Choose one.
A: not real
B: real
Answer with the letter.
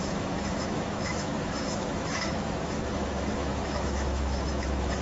A